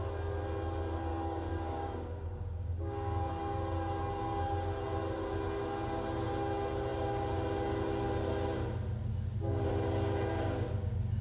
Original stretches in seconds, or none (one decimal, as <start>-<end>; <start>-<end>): 0.0-1.1; 3.3-11.2